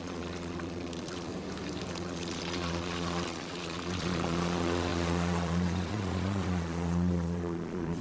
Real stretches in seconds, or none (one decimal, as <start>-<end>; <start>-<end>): 1.3-1.9